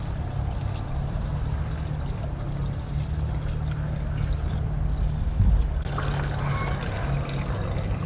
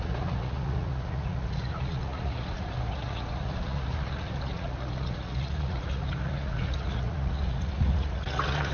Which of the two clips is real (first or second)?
first